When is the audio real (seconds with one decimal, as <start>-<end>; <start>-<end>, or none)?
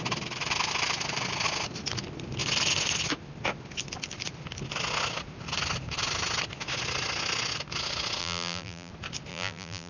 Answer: 0.0-8.2; 8.9-9.3